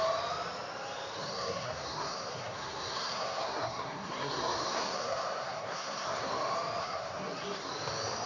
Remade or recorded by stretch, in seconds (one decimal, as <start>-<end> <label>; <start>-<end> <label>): 0.0-1.3 recorded; 1.3-6.3 remade; 6.3-6.8 recorded; 6.8-7.7 remade; 7.7-8.3 recorded